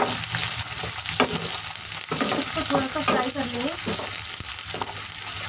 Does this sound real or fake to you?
real